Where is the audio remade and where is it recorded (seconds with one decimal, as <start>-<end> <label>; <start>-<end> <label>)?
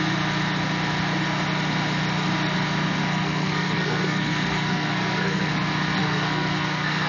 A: 0.0-3.0 recorded; 3.0-5.5 remade; 5.5-6.0 recorded; 6.0-7.1 remade